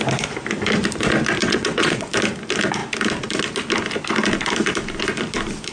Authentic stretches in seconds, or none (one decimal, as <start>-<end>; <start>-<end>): 0.0-1.4; 2.1-5.7